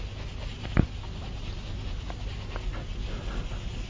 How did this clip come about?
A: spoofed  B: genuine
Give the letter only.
B